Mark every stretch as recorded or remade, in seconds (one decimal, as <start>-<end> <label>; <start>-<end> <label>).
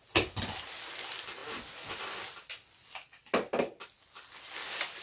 0.0-5.0 recorded